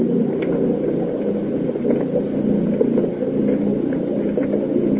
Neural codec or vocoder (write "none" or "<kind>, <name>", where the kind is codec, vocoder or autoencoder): none